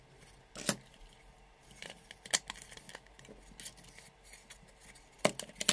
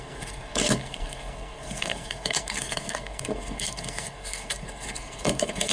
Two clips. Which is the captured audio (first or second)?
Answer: first